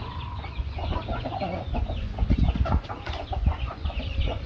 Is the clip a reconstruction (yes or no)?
yes